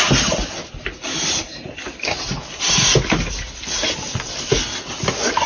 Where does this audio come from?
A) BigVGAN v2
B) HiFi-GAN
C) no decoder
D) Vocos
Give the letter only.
C